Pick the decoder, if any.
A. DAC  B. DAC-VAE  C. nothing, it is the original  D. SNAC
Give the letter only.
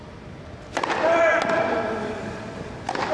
C